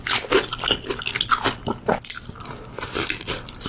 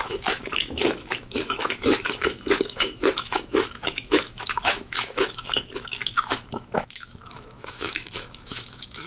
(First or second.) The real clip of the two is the first